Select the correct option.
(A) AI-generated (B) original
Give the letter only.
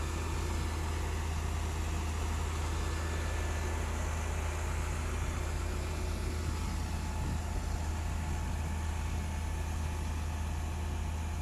B